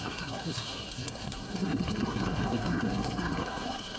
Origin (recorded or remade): remade